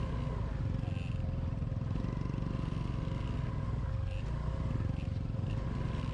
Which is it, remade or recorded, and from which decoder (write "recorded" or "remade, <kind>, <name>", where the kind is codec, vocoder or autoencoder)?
recorded